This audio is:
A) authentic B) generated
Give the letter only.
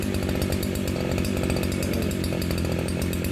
A